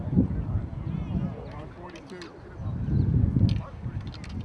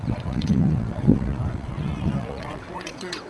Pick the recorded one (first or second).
first